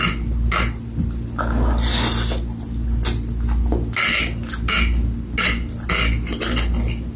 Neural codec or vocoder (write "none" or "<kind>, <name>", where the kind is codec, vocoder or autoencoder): none